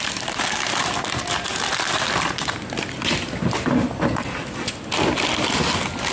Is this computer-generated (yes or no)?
no